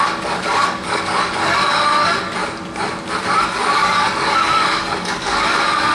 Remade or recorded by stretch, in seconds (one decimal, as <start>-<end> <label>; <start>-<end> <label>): 0.0-2.4 remade; 2.4-3.2 recorded; 3.2-5.9 remade